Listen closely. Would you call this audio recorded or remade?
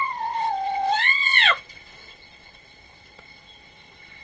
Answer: remade